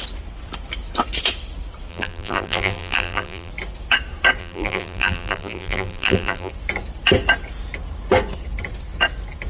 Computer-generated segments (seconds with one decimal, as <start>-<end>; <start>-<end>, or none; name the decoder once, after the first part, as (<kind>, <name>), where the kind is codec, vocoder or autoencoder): 1.9-3.5 (vocoder, BigVGAN v2); 4.4-6.5